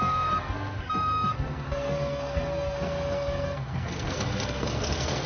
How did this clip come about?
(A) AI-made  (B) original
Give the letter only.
A